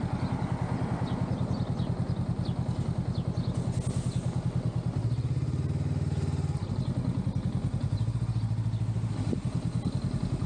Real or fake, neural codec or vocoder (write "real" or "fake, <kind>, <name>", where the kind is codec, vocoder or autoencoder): real